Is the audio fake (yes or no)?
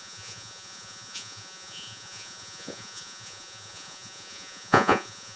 yes